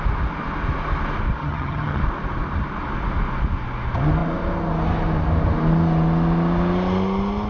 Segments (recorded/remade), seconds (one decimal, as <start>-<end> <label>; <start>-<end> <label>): 0.0-1.4 recorded; 1.4-2.0 remade; 2.0-7.5 recorded